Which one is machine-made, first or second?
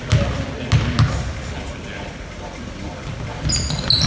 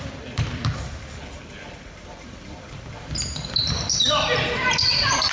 second